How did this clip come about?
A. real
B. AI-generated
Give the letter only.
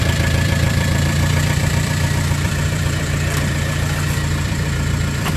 B